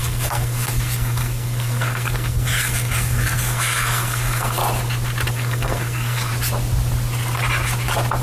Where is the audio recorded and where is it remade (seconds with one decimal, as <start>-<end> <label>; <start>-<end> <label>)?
0.0-4.6 remade; 4.6-5.3 recorded; 5.3-6.3 remade; 6.3-8.2 recorded